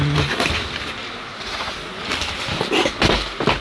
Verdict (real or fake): real